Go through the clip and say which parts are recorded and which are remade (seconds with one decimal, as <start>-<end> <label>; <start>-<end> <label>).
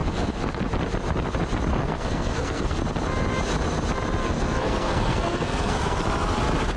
0.0-0.6 remade; 0.6-1.7 recorded; 1.7-2.8 remade; 2.8-4.2 recorded; 4.2-6.0 remade; 6.0-6.8 recorded